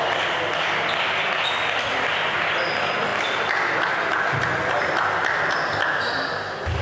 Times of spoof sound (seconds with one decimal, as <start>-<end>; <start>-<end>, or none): none